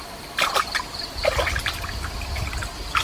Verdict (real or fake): real